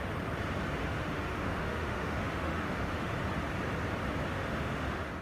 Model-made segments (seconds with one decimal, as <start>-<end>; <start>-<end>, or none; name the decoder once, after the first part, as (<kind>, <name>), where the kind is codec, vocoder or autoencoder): 0.8-3.1 (autoencoder, DAC-VAE); 4.3-5.2